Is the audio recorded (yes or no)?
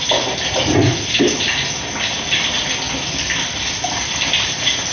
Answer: yes